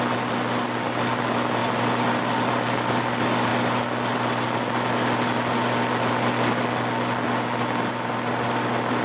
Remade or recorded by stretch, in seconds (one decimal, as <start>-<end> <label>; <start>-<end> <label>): 0.0-9.0 recorded